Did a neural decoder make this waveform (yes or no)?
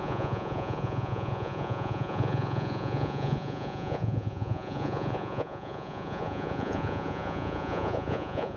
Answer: yes